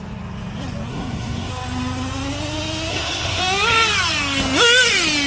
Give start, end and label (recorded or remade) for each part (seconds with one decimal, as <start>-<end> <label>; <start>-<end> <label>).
0.0-0.9 recorded; 0.9-1.5 remade; 1.5-2.9 recorded; 2.9-3.4 remade; 3.4-5.3 recorded